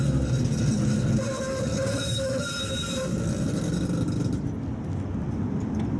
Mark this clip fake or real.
real